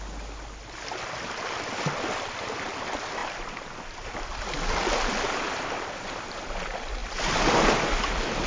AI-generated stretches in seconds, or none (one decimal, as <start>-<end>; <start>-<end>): none